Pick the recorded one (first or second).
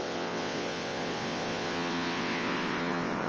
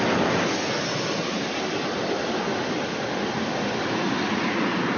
second